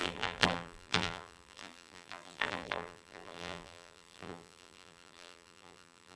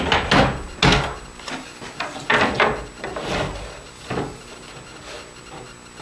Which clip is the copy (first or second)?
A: first